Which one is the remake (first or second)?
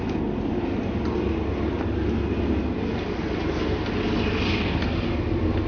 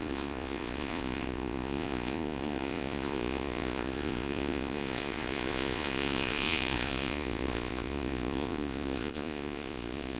second